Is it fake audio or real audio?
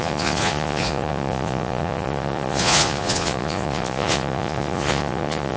fake